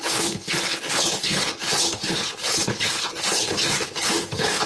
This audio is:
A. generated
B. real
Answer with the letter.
A